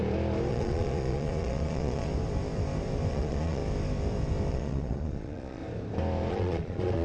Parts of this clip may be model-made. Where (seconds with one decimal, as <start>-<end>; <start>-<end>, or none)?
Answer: 0.5-2.1; 3.1-3.6; 4.5-5.6; 6.3-7.0